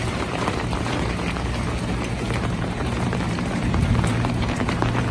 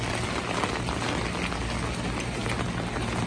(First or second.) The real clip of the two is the second